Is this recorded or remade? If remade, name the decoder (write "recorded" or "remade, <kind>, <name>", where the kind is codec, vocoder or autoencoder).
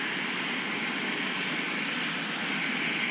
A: recorded